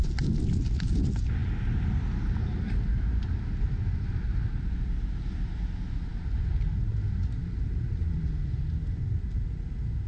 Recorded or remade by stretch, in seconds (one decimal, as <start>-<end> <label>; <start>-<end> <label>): 0.0-10.1 recorded